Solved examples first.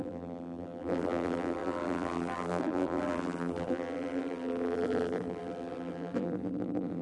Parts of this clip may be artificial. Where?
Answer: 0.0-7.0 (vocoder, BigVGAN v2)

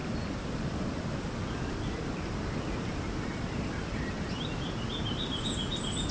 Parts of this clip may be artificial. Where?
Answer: none

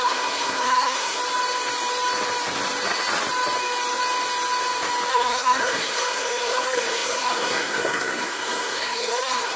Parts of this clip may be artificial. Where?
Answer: 0.0-1.2 (codec, SNAC); 5.1-9.6

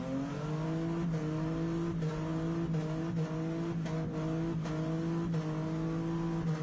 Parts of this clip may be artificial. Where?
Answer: none

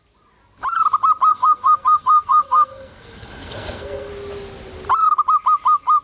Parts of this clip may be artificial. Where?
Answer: 1.3-4.1 (codec, SNAC)

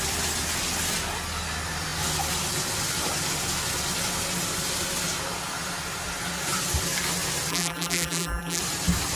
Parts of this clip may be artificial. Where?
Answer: 7.5-8.6 (vocoder, BigVGAN v2)